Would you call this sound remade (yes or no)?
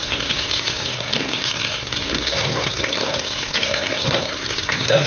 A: yes